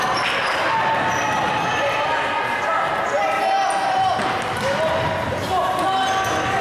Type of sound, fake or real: real